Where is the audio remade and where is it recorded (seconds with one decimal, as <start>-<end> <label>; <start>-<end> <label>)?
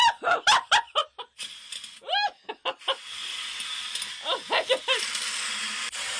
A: 0.0-6.2 recorded